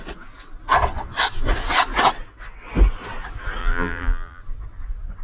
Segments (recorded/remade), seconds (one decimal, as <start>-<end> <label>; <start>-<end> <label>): 0.0-3.6 recorded; 3.6-4.4 remade; 4.4-5.2 recorded